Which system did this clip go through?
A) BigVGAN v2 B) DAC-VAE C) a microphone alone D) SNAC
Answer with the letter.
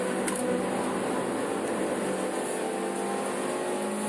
C